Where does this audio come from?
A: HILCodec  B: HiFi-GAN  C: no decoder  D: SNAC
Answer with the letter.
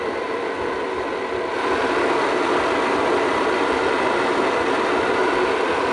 C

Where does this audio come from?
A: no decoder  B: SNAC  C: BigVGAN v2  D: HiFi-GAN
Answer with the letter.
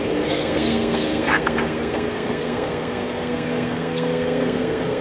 B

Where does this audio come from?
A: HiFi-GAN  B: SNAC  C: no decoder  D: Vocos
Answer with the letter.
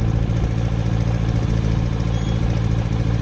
C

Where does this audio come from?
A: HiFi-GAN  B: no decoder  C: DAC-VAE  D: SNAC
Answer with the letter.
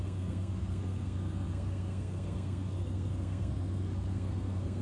D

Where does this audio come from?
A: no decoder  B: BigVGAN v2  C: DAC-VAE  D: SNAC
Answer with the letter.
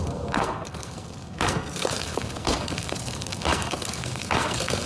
D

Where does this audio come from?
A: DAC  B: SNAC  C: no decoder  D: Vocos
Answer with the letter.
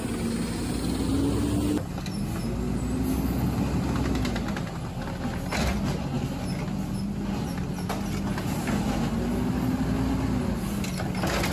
C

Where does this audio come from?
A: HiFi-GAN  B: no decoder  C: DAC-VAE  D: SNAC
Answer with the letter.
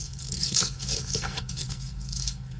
D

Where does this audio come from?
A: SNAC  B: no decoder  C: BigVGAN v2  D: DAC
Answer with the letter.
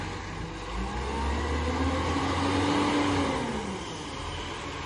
B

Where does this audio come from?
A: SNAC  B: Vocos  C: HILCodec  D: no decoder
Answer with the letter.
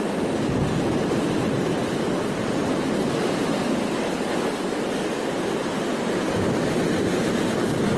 D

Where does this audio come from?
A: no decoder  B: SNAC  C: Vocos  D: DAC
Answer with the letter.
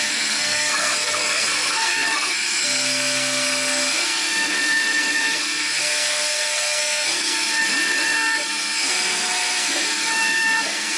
B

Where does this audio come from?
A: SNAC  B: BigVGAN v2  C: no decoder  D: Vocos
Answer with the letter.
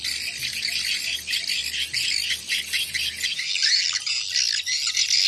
C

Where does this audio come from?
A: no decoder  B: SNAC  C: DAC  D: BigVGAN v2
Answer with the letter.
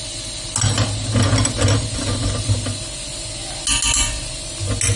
A